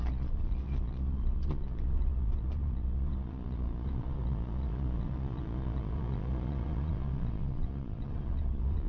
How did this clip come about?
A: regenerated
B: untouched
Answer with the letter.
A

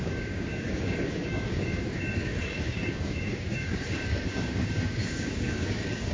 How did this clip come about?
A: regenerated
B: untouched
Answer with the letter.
A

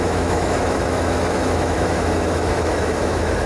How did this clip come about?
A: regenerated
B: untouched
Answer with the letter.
A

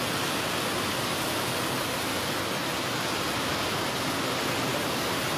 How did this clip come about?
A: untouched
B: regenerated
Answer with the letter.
A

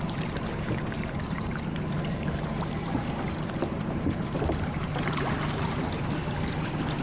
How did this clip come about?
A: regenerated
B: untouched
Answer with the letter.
A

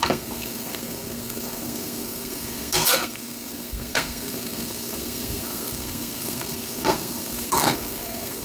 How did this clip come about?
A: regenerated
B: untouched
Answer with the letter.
A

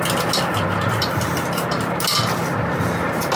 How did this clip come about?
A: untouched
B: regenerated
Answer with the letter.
A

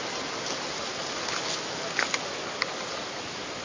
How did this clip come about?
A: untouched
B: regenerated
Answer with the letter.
A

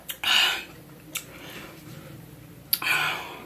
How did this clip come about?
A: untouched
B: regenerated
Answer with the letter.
A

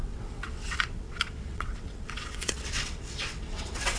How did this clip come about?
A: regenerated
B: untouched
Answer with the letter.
A